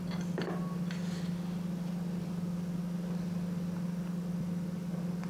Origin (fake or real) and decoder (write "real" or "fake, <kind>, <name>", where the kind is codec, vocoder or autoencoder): real